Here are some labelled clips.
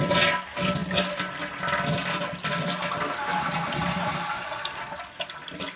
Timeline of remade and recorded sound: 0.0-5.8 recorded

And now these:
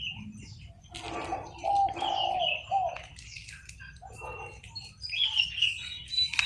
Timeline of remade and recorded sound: 0.0-5.6 recorded; 5.6-6.1 remade; 6.1-6.5 recorded